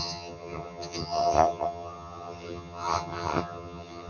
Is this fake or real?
fake